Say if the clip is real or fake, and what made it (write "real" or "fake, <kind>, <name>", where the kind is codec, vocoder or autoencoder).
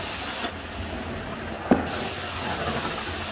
real